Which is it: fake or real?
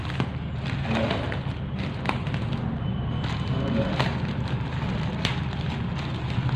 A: real